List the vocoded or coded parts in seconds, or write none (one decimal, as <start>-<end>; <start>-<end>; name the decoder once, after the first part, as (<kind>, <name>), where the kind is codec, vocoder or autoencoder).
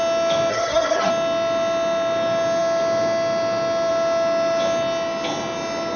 0.5-1.1 (codec, SNAC)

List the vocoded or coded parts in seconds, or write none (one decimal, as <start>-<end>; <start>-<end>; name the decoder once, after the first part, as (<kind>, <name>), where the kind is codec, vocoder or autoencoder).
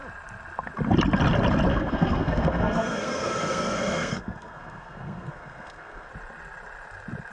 1.7-6.1 (codec, SNAC)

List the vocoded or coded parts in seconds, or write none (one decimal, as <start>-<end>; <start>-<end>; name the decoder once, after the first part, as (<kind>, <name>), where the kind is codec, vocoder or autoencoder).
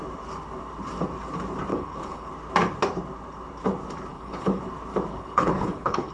1.7-2.3 (codec, HILCodec); 4.1-4.6; 5.1-6.1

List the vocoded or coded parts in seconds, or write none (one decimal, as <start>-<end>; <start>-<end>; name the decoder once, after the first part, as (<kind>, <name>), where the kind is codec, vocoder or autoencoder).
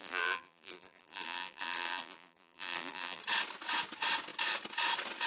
0.0-3.2 (vocoder, BigVGAN v2)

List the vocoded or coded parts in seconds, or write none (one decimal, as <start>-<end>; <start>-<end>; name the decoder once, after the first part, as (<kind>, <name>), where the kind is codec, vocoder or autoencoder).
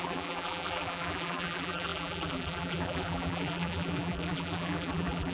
0.0-5.3 (vocoder, BigVGAN v2)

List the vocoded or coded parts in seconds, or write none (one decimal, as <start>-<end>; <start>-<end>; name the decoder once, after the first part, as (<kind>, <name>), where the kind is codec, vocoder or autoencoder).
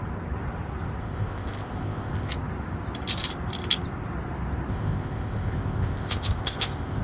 1.0-2.3 (codec, ZipCodec); 4.7-7.0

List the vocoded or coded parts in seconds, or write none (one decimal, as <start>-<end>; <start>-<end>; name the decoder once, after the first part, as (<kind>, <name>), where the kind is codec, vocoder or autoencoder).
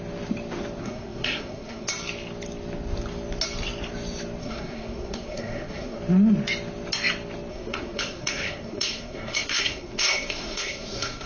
0.8-1.9 (codec, SNAC); 4.4-6.0; 7.5-11.3